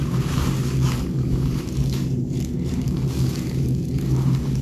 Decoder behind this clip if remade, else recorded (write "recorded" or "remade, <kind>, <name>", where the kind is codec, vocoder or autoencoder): remade, codec, DAC